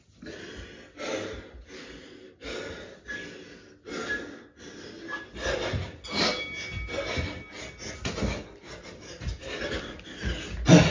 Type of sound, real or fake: real